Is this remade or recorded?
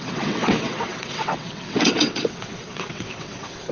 remade